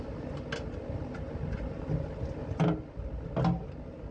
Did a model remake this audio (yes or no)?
no